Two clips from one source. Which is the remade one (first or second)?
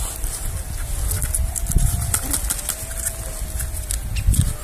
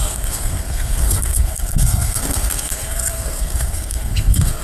second